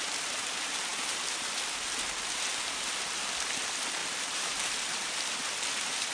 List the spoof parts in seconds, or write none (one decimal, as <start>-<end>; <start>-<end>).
4.0-5.2